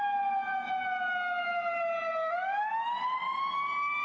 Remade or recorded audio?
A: recorded